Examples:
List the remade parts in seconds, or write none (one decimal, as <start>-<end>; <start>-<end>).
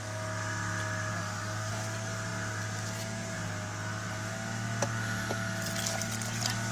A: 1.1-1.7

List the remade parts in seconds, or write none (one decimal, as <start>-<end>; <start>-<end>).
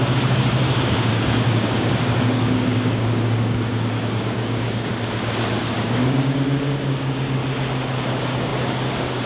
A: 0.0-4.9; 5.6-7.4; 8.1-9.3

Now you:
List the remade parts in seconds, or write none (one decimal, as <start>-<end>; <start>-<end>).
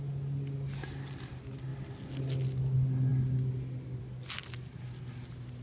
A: none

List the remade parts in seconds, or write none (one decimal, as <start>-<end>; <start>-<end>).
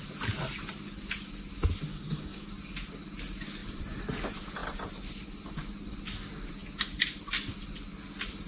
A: 1.9-2.5